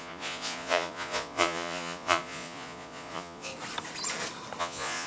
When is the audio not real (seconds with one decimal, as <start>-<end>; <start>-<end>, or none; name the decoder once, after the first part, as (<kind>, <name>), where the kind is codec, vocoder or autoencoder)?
0.0-3.5 (vocoder, Vocos); 4.6-5.1